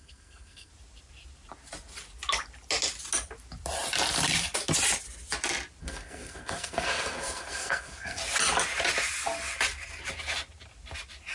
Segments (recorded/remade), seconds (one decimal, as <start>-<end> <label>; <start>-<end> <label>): 0.0-0.7 remade; 0.7-5.8 recorded; 5.8-8.2 remade; 8.2-11.3 recorded

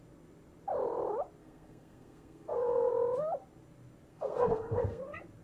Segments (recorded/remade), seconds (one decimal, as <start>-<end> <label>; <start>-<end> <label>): 0.0-1.4 recorded; 1.4-2.9 remade; 2.9-4.1 recorded; 4.1-5.0 remade; 5.0-5.4 recorded

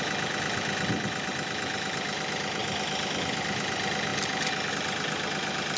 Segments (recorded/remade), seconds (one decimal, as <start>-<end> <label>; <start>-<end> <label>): 0.0-5.8 recorded

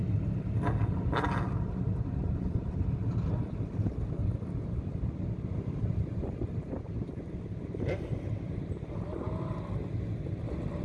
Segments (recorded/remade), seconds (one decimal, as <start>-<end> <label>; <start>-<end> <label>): 0.0-10.8 recorded

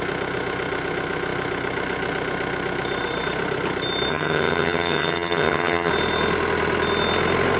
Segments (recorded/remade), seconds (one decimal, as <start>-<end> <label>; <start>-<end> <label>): 0.0-4.1 recorded; 4.1-5.9 remade; 5.9-7.6 recorded